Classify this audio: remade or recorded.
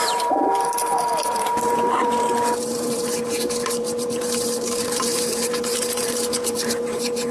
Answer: remade